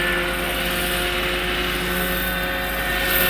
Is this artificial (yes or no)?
no